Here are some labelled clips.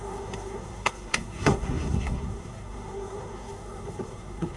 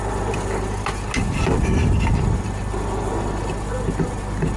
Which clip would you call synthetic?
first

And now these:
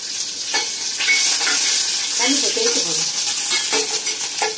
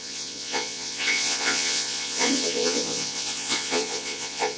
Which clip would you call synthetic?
second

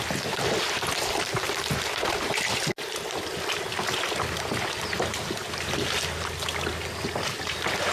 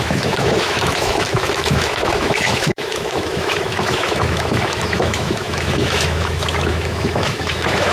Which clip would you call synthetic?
second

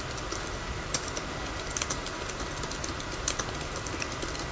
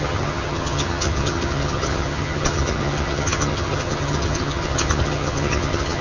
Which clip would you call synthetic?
second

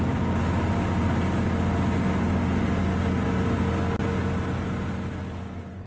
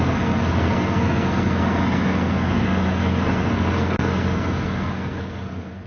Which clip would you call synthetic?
second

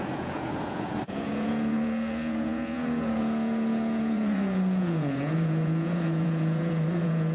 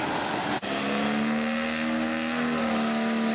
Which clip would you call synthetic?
first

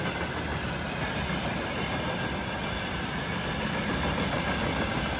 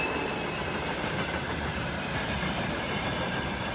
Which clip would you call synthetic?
second